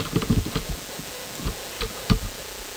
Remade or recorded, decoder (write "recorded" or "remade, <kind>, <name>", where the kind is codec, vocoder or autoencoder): recorded